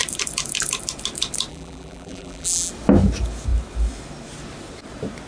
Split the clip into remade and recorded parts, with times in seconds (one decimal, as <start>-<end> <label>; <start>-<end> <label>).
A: 0.0-1.5 recorded; 1.5-2.7 remade; 2.7-5.3 recorded